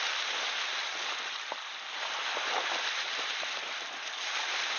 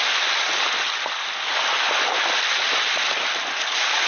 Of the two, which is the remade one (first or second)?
first